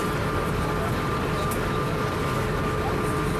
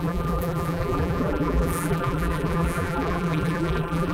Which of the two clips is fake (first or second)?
second